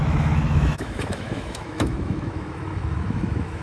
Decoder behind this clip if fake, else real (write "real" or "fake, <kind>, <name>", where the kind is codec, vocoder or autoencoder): fake, autoencoder, DAC-VAE